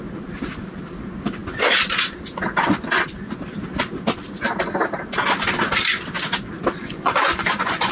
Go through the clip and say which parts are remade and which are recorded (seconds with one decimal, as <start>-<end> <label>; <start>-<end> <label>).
0.0-6.8 recorded; 6.8-7.9 remade